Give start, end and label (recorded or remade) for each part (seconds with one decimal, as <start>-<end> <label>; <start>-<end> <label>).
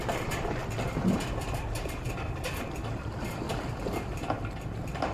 0.0-0.6 remade; 0.6-2.1 recorded; 2.1-5.1 remade